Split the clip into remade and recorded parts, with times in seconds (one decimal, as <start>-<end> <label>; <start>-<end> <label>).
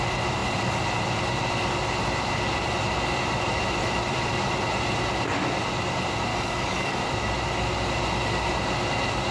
0.0-6.3 recorded; 6.3-7.0 remade; 7.0-9.3 recorded